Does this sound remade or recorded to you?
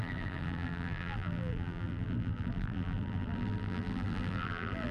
remade